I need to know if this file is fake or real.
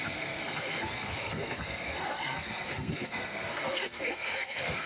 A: fake